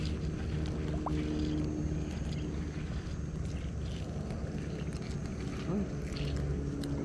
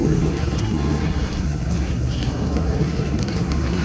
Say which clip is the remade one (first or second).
second